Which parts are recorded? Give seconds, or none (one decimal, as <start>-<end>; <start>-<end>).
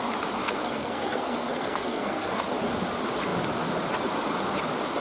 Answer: 0.0-0.4; 2.4-5.0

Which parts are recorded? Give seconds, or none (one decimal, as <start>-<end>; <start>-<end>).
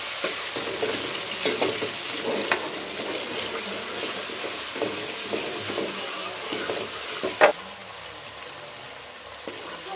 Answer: 0.0-10.0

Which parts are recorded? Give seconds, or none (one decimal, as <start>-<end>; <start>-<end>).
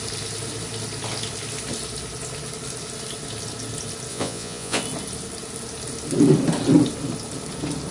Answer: 0.0-4.1; 4.8-7.9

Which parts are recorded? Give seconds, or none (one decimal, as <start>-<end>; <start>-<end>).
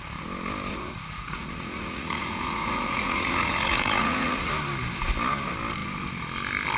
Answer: 0.0-0.7; 4.5-6.8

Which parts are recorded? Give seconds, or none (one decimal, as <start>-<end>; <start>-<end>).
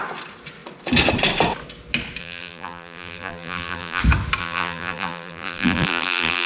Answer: 0.0-2.2; 4.0-4.4